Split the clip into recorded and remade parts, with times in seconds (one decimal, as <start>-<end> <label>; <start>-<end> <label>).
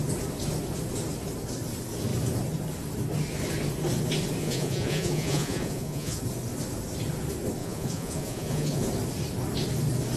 0.0-4.4 recorded; 4.4-6.2 remade; 6.2-7.6 recorded; 7.6-8.9 remade; 8.9-10.2 recorded